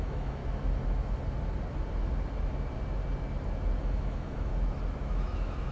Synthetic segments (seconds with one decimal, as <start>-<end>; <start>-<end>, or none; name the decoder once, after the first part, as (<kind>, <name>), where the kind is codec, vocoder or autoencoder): 0.0-0.4 (autoencoder, DAC-VAE); 3.8-4.5; 5.0-5.7